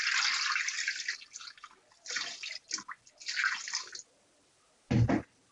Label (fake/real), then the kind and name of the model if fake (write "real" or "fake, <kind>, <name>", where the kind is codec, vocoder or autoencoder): real